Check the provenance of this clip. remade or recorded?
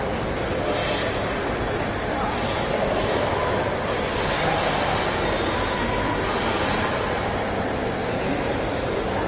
recorded